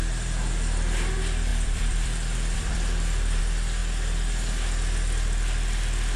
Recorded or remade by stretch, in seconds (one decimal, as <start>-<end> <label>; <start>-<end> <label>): 0.0-1.5 recorded; 1.5-3.4 remade; 3.4-6.2 recorded